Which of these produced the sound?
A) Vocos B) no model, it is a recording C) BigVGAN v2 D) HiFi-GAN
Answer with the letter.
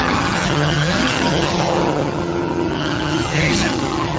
D